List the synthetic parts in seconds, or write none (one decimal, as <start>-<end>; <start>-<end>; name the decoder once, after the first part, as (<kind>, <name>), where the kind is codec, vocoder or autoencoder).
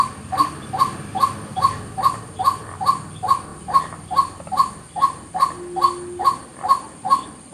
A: none